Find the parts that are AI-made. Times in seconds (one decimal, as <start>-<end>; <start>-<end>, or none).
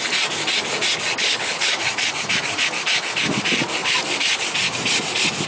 1.2-1.7